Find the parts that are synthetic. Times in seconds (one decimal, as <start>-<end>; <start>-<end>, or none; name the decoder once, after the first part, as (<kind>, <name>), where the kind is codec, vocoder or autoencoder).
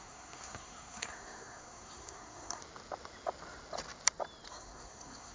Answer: 0.0-2.6 (codec, SNAC); 4.5-5.3